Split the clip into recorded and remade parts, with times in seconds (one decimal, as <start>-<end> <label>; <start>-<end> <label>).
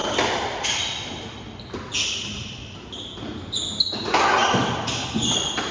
0.0-5.7 recorded